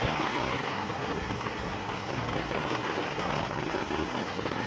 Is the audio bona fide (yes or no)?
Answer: no